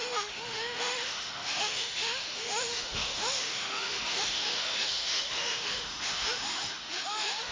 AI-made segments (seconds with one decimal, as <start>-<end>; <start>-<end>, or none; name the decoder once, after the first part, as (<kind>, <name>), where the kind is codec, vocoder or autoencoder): 0.0-7.5 (autoencoder, DAC-VAE)